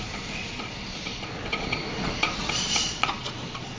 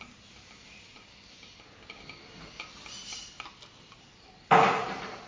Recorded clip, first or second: second